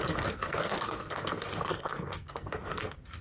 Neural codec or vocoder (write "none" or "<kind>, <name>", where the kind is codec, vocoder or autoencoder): codec, SNAC